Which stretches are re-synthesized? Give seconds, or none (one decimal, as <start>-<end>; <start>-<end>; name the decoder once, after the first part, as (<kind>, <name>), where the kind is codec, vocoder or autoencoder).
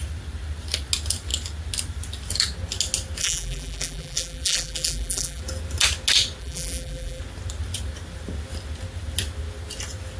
3.2-5.4 (vocoder, BigVGAN v2); 6.4-7.2